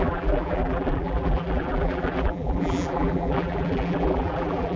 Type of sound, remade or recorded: remade